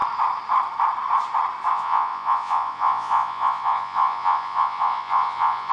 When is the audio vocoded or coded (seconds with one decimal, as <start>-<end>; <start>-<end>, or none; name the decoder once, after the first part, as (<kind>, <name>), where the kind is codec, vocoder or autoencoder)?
1.7-5.7 (vocoder, Vocos)